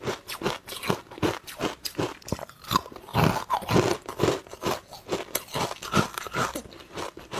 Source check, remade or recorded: recorded